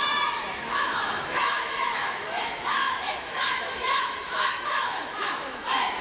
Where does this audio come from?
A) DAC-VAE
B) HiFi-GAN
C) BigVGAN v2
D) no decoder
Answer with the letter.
A